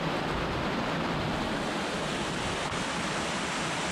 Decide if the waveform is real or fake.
real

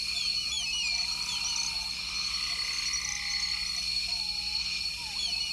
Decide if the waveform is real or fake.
real